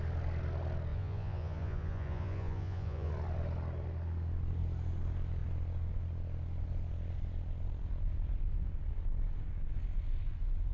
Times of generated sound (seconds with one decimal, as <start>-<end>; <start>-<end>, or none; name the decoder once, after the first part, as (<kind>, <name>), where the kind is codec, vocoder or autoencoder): 0.9-3.1 (vocoder, Vocos)